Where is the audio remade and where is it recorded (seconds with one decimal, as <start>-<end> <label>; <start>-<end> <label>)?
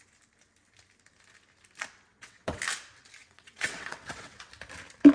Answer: 0.0-2.1 recorded; 2.1-2.6 remade; 2.6-3.2 recorded; 3.2-4.5 remade; 4.5-5.1 recorded